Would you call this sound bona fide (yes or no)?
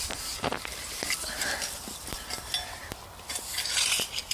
yes